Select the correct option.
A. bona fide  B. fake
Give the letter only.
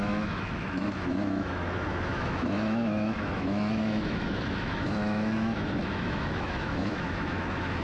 B